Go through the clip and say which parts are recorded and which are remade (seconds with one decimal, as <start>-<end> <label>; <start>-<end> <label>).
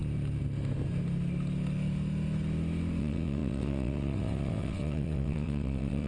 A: 0.0-3.0 recorded; 3.0-6.1 remade